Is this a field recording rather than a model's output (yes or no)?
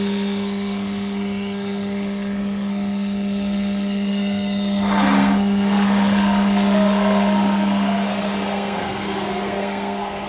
no